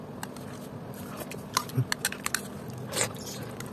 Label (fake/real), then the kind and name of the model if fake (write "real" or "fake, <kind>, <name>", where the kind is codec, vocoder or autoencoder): real